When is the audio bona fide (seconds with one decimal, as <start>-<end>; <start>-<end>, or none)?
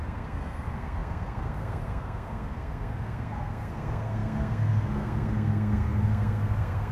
none